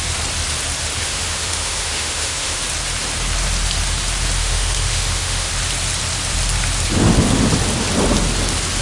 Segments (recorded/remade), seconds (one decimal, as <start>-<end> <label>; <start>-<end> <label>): 0.0-1.0 recorded; 1.0-2.6 remade; 2.6-4.4 recorded; 4.4-5.5 remade; 5.5-8.8 recorded